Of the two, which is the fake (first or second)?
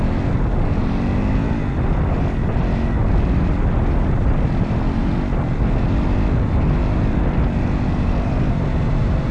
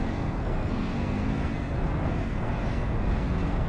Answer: second